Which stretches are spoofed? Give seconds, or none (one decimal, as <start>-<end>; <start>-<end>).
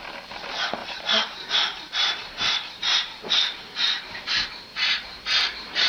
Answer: 0.8-4.3; 4.7-5.9